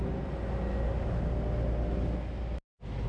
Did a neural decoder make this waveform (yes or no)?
no